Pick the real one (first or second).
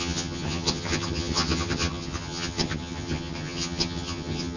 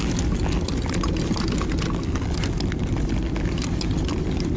second